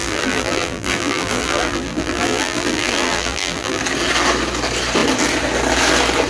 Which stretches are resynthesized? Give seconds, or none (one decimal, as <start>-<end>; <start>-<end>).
0.0-3.8